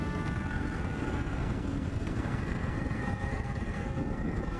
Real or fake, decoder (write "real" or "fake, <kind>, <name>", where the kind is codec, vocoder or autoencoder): fake, codec, SNAC